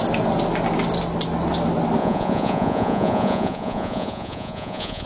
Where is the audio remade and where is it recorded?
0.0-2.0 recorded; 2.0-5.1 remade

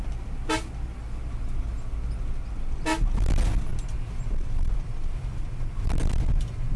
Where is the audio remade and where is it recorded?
0.0-6.8 recorded

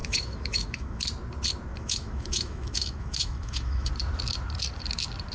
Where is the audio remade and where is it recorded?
0.0-1.0 remade; 1.0-1.7 recorded; 1.7-3.9 remade; 3.9-5.3 recorded

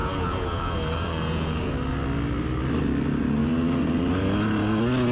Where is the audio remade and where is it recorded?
0.0-1.7 remade; 1.7-5.1 recorded

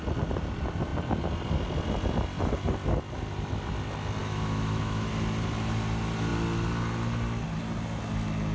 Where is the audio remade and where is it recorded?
0.0-4.2 recorded; 4.2-5.1 remade; 5.1-8.5 recorded